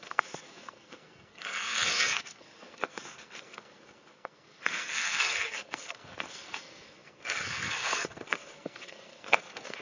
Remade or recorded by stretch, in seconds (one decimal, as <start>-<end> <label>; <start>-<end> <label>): 0.0-9.8 remade